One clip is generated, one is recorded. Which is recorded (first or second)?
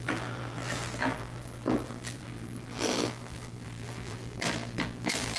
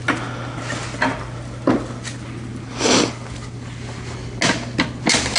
second